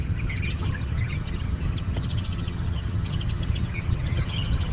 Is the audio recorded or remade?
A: remade